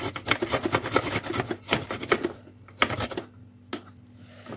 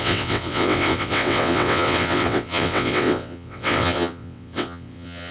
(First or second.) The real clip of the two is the first